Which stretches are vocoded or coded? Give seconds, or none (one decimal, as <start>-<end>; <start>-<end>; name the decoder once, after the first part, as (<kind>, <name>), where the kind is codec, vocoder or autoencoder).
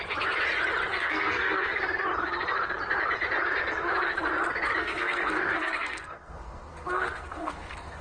0.9-1.8 (codec, SNAC); 4.8-8.0